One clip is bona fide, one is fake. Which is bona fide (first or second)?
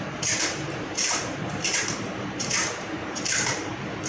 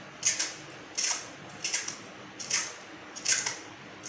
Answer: second